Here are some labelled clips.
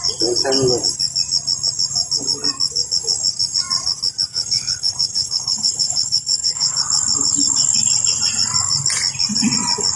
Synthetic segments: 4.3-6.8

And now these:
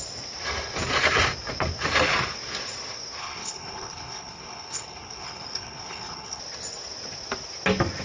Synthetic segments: 3.2-6.4

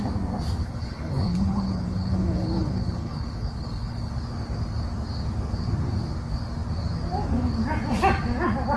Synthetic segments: 0.6-4.1

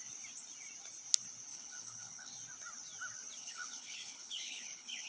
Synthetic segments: 1.5-2.3; 3.4-5.1

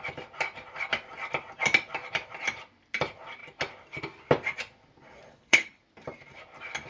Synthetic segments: 5.3-5.8

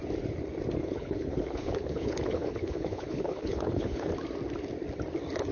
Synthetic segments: 0.8-4.1

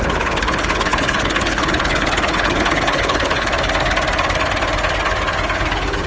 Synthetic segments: 0.0-3.5

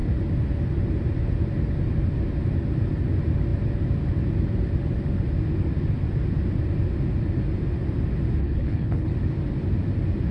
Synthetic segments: 8.4-9.1